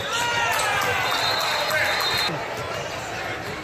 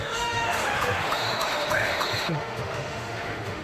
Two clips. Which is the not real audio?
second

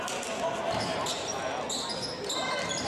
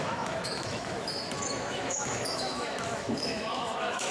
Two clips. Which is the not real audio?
second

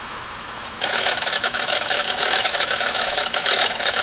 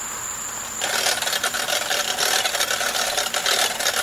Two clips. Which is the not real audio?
first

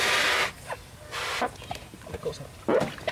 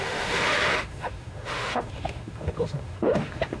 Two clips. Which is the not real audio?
second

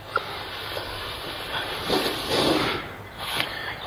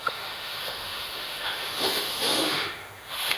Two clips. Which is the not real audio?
second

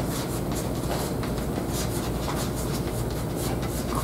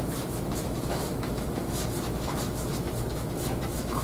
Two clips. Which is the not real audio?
second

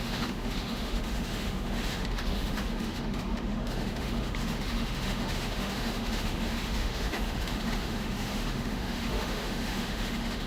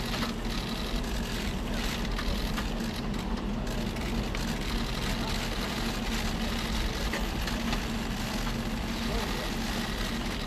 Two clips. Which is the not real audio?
first